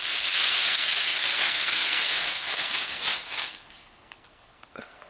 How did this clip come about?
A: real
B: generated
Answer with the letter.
B